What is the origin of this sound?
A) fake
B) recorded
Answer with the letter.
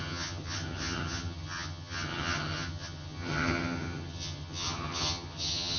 A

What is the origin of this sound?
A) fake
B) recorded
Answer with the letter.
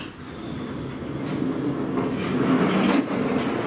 B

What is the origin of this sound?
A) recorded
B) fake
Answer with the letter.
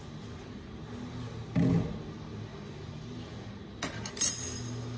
A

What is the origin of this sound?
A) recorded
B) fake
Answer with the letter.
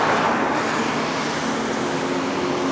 A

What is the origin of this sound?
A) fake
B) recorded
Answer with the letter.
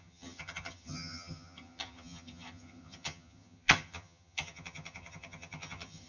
A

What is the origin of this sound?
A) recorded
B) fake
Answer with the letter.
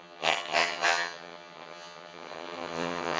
B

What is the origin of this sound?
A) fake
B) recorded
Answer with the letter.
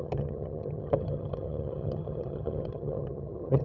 A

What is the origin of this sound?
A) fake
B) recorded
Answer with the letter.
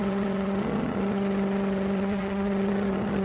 A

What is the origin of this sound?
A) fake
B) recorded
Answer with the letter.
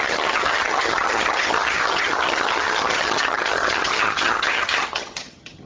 A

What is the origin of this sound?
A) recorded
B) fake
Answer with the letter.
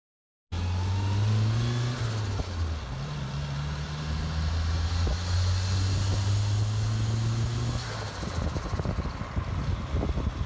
A